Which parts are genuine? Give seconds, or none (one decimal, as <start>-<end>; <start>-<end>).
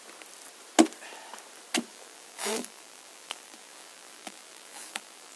0.0-1.9